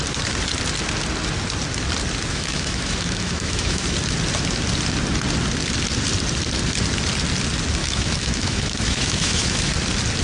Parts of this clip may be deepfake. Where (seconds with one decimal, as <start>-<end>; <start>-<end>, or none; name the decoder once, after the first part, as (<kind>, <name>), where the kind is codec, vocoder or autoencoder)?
2.3-3.9 (autoencoder, DAC-VAE); 7.8-9.7